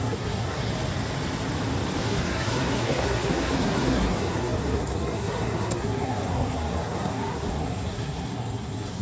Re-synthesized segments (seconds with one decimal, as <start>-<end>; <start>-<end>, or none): 0.0-0.7; 2.0-9.0